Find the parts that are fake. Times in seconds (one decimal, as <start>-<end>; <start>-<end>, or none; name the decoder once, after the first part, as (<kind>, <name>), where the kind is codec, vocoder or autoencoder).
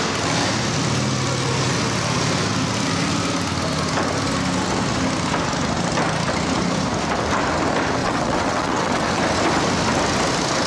8.0-9.2 (vocoder, WaveNeXt)